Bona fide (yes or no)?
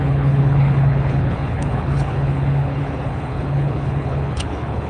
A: no